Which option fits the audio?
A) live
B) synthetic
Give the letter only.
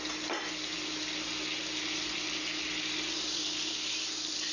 A